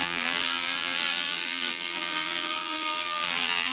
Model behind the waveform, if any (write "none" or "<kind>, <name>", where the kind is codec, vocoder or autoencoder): vocoder, BigVGAN v2